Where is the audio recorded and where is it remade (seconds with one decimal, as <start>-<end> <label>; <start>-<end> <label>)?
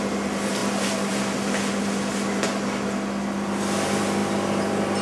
0.0-0.6 recorded; 0.6-1.1 remade; 1.1-5.0 recorded